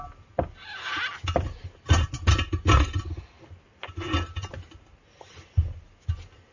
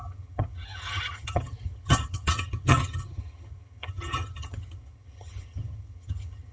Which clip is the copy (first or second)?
second